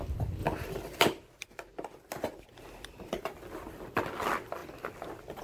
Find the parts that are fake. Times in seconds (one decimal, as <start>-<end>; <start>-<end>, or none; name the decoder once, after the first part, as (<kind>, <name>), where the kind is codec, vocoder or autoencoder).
none